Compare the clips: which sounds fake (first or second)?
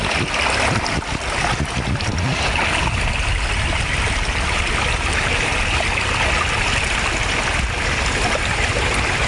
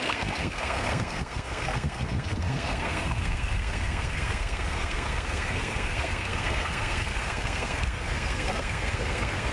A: second